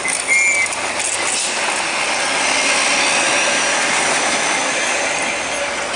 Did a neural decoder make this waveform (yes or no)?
no